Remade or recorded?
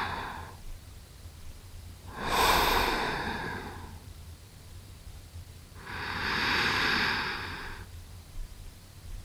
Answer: remade